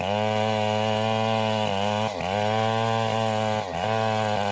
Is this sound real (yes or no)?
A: yes